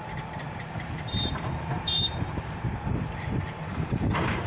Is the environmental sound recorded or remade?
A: remade